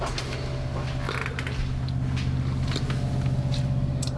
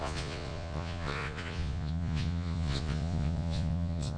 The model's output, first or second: second